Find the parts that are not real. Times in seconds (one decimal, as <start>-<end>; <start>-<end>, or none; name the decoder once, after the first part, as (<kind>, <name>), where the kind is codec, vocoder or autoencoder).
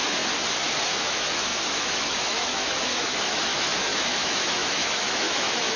0.7-5.8 (autoencoder, DAC-VAE)